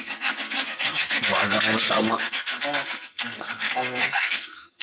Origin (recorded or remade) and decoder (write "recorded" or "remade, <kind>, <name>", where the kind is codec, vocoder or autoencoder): remade, codec, SNAC